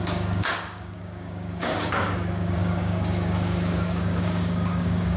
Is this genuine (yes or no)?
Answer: no